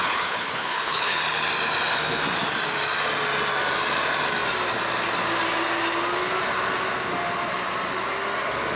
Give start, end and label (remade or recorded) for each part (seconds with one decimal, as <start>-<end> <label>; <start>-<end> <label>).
0.0-1.2 remade; 1.2-8.8 recorded